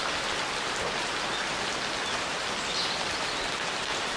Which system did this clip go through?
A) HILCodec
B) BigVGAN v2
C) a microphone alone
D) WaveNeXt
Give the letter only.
C